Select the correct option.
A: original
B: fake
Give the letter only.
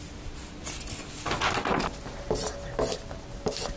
A